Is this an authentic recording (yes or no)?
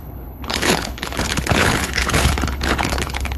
no